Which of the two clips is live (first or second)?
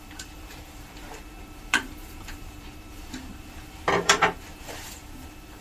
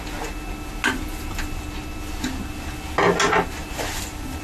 second